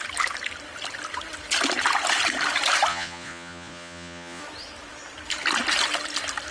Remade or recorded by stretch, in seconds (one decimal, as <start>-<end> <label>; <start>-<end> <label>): 0.0-2.9 recorded; 2.9-4.4 remade; 4.4-6.5 recorded